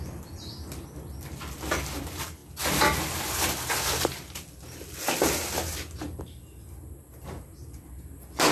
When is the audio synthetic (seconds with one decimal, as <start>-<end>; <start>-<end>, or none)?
none